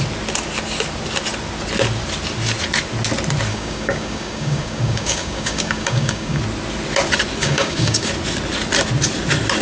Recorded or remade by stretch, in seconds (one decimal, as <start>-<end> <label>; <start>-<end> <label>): 0.0-3.5 recorded; 3.5-6.4 remade; 6.4-7.4 recorded; 7.4-8.1 remade; 8.1-9.6 recorded